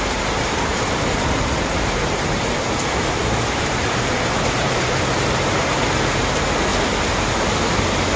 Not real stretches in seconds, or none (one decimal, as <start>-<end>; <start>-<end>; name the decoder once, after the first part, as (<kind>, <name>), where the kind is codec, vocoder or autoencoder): 0.7-5.6 (vocoder, BigVGAN v2)